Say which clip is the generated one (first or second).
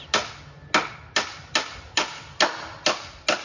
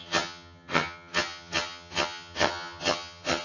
second